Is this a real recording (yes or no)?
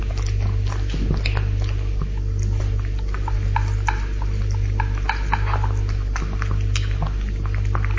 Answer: yes